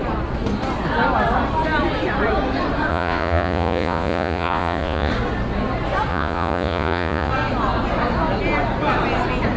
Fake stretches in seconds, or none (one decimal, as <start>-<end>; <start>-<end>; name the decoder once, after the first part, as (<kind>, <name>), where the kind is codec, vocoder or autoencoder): 2.9-5.1 (vocoder, Vocos); 6.1-7.3